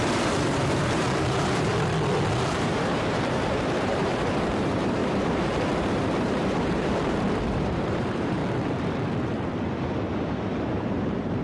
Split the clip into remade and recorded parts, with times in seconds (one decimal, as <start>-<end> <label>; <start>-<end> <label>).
0.0-1.7 remade; 1.7-2.5 recorded; 2.5-8.4 remade; 8.4-10.3 recorded; 10.3-11.4 remade